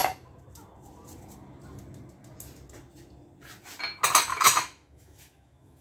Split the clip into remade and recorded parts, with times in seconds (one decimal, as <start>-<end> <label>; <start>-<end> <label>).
0.0-4.3 recorded; 4.3-5.8 remade